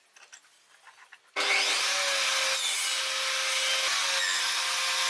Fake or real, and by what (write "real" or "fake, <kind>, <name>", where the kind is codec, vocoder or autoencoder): real